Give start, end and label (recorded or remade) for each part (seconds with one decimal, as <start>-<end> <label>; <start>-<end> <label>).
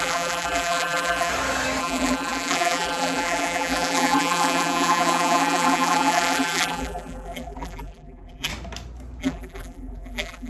0.0-1.3 remade; 1.3-1.8 recorded; 1.8-8.5 remade; 8.5-9.2 recorded; 9.2-10.5 remade